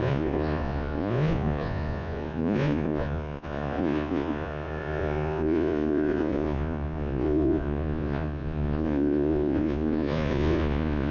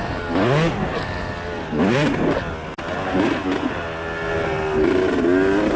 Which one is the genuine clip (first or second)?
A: second